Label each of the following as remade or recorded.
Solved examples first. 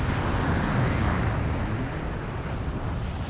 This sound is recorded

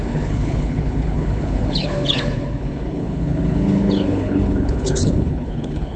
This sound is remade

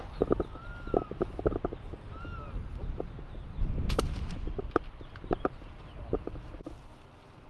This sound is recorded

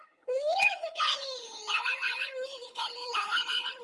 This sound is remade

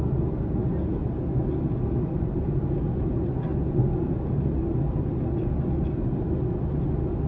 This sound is recorded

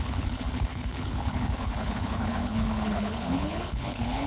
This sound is remade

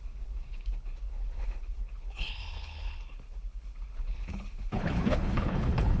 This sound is remade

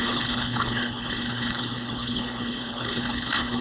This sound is remade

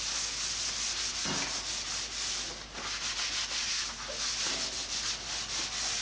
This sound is recorded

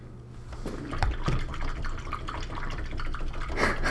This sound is recorded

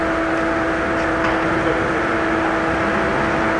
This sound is recorded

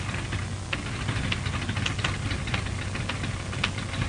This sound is recorded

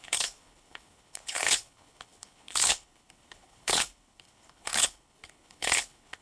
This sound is remade